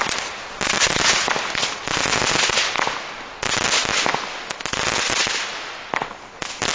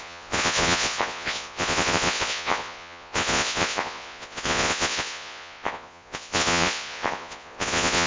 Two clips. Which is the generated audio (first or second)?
second